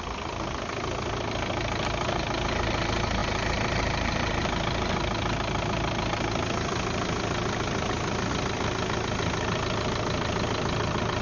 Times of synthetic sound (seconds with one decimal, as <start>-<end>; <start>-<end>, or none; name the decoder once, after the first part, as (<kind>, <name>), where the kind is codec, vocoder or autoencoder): none